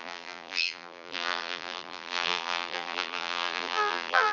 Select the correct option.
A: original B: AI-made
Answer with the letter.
B